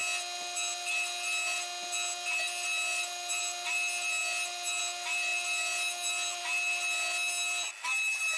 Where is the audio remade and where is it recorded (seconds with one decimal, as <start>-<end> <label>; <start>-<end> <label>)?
0.0-8.4 recorded